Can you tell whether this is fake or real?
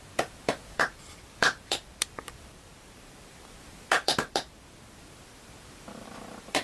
fake